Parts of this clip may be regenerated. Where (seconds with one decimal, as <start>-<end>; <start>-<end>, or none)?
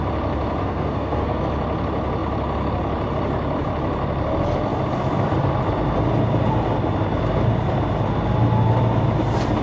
0.6-1.4